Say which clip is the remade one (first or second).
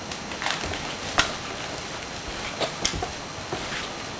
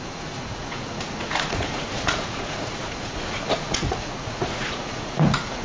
second